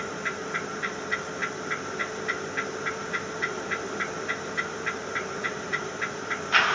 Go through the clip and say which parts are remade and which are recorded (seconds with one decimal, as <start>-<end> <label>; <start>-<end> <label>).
0.0-1.4 remade; 1.4-2.9 recorded; 2.9-6.7 remade